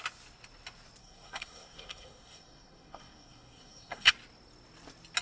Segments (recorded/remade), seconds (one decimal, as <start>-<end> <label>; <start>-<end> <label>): 0.0-1.0 recorded; 1.0-4.1 remade; 4.1-5.2 recorded